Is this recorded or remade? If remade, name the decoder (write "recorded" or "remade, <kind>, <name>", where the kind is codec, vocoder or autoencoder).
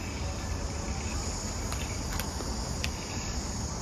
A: recorded